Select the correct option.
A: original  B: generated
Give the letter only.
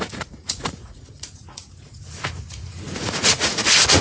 B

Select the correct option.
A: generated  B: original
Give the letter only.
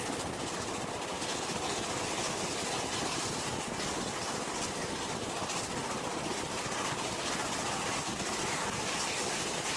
B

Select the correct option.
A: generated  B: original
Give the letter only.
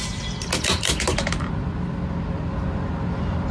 B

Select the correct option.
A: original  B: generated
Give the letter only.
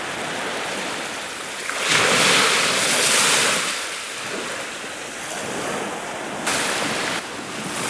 A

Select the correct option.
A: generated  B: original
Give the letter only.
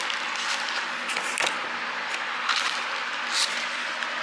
B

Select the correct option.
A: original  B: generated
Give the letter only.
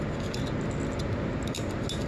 A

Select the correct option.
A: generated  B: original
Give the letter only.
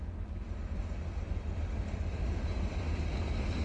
B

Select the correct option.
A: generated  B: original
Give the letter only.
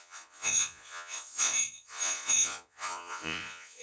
A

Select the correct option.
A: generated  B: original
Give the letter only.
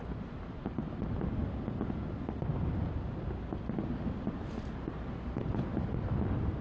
B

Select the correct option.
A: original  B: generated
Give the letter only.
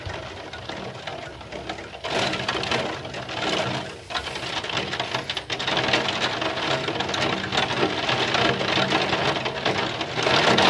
A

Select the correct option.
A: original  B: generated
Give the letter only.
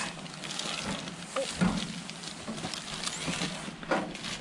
A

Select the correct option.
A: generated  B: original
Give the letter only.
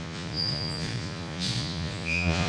A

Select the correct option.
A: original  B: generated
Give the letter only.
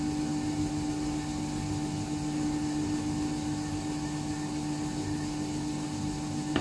A